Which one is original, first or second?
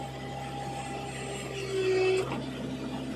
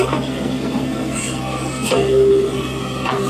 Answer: first